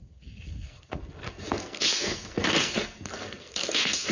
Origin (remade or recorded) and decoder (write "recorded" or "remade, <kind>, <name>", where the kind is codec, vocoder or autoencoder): remade, codec, SNAC